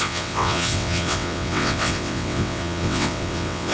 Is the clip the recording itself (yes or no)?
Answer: no